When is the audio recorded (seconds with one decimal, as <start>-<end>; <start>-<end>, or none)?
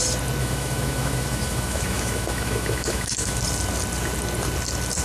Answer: 0.0-0.4; 3.4-5.0